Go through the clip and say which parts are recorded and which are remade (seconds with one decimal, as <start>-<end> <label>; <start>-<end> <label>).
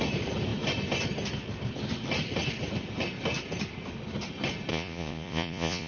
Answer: 0.0-4.7 recorded; 4.7-5.9 remade